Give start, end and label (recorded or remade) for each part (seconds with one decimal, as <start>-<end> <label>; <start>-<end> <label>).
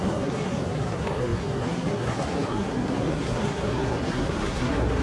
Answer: 0.0-5.0 remade